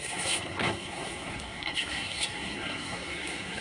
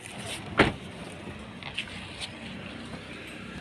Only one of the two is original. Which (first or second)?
second